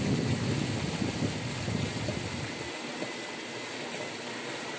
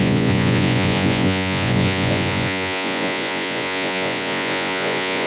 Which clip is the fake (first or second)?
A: second